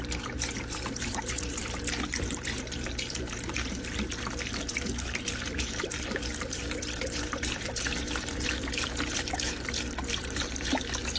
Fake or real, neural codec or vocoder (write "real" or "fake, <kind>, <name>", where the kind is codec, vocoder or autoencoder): fake, vocoder, BigVGAN v2